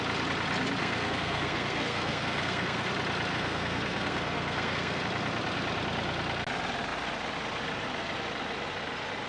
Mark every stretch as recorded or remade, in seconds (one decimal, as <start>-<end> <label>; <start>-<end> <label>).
0.0-0.8 recorded; 0.8-2.9 remade; 2.9-3.3 recorded; 3.3-5.0 remade; 5.0-9.3 recorded